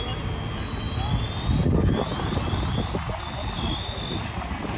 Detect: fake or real real